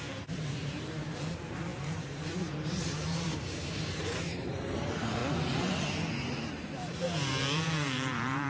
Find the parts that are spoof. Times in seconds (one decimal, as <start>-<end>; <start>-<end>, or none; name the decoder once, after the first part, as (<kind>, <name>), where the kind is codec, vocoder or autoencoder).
0.0-5.2 (vocoder, BigVGAN v2); 6.2-8.5